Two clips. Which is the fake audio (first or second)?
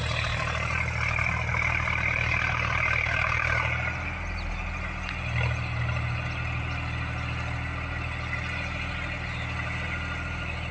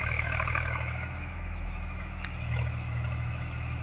second